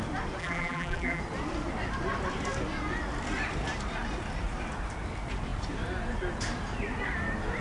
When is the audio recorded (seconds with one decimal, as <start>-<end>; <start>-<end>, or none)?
0.0-0.4; 1.2-7.6